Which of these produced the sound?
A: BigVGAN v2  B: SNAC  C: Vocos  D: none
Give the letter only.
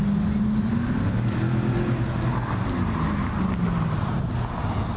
D